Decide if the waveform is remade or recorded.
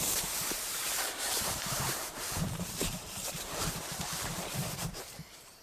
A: remade